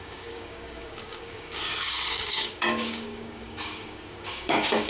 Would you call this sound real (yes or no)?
no